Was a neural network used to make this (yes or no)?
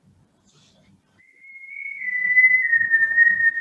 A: yes